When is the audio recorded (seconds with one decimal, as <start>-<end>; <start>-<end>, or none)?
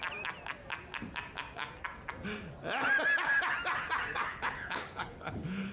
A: 0.0-4.3